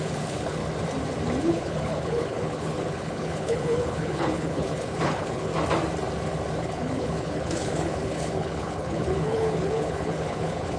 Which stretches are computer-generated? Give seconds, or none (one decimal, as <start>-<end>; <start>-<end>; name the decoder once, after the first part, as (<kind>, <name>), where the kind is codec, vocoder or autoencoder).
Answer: 0.0-0.6 (codec, HILCodec); 1.4-5.5; 6.6-10.8